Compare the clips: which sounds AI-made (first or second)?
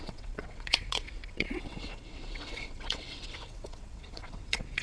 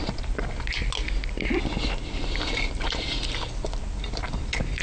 first